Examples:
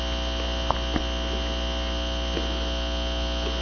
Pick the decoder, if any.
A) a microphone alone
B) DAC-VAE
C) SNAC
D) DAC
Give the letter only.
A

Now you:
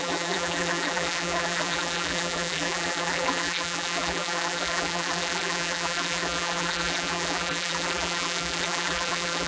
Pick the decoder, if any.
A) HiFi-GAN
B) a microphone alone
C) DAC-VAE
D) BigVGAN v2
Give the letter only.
D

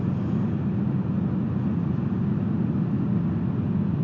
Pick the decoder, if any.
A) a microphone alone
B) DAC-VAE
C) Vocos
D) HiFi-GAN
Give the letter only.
A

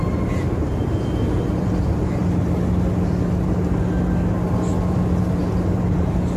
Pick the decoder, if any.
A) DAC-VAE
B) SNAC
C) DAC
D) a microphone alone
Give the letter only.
D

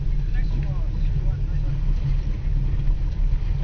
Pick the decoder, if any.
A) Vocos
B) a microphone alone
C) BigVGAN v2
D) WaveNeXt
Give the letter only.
B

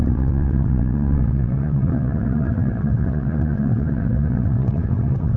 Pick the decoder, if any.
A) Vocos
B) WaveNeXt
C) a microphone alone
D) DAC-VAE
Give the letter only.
B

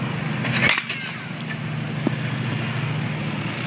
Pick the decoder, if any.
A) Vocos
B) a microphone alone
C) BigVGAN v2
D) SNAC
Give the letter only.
B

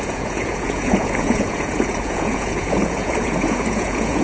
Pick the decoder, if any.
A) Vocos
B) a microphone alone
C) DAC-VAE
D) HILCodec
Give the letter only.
A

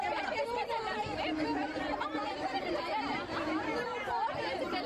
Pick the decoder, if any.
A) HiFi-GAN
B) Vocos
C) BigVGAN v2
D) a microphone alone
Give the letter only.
C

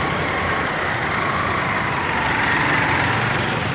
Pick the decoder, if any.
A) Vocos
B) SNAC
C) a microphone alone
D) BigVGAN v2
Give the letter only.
C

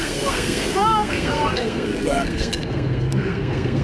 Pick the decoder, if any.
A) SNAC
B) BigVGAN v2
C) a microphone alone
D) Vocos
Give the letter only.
A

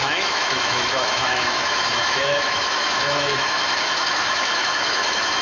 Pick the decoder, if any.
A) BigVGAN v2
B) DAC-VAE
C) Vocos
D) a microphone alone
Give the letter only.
B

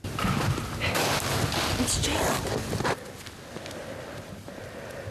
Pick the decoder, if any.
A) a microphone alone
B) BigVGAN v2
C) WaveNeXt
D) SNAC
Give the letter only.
A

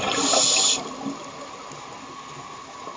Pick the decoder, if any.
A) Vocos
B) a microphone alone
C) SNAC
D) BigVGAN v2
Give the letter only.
B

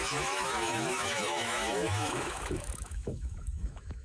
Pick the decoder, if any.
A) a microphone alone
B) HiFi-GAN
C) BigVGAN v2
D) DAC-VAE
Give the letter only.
D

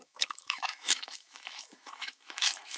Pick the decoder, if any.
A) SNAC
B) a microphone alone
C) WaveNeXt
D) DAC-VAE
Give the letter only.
D